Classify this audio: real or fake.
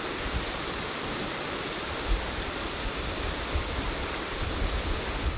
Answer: fake